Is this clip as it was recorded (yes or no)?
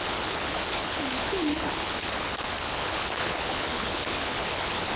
no